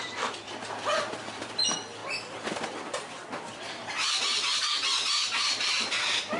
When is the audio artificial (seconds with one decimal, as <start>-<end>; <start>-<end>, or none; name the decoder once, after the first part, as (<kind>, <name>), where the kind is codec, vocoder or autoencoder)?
0.0-2.0 (vocoder, BigVGAN v2); 5.8-6.4